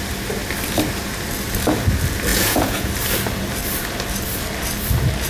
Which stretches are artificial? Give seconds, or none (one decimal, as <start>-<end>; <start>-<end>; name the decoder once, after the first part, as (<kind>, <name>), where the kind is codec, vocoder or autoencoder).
2.3-2.9 (vocoder, Vocos)